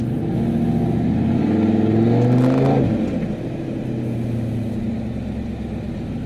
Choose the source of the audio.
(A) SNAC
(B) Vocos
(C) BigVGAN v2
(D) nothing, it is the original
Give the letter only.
D